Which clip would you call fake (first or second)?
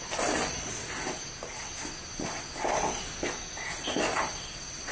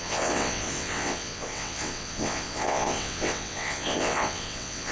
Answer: second